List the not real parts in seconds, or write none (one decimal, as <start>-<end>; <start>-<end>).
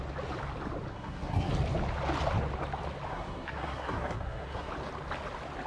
0.9-1.5; 3.1-4.7